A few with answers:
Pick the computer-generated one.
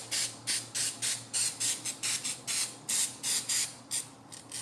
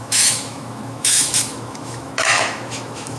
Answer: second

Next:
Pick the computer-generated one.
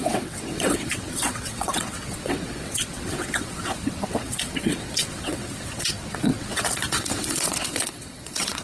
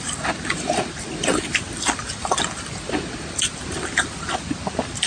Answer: first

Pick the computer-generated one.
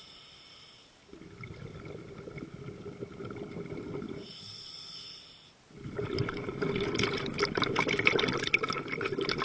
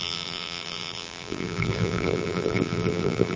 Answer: second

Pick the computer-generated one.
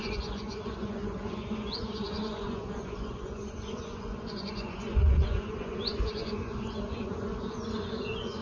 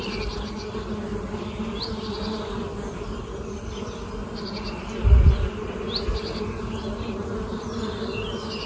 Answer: first